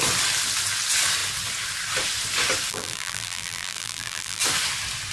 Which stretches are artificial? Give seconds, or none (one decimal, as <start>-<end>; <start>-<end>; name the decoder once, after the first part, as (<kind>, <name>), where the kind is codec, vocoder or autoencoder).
2.7-4.4 (vocoder, BigVGAN v2)